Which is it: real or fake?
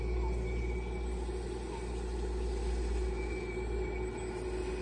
real